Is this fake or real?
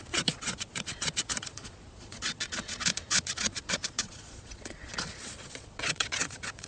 fake